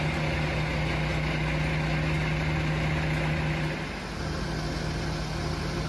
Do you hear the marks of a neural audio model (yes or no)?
no